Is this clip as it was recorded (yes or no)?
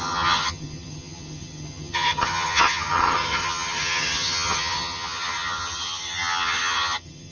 no